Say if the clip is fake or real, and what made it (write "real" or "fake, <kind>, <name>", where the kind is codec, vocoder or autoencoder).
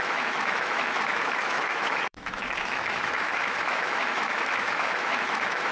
fake, autoencoder, DAC-VAE